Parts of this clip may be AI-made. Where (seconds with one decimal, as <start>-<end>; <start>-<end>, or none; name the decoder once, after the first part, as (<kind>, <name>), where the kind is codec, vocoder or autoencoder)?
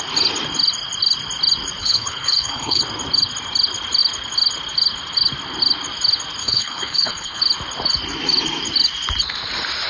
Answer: 1.8-2.8 (codec, HILCodec); 6.4-7.4